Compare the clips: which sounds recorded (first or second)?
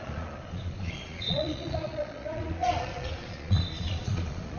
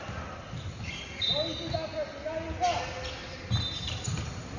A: second